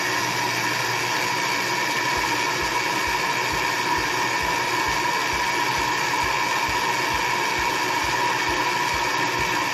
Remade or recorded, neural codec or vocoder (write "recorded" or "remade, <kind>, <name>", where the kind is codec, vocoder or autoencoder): recorded